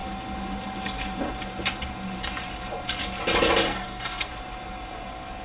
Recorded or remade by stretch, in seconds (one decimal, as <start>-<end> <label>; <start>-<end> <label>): 0.0-3.7 recorded; 3.7-4.3 remade; 4.3-5.4 recorded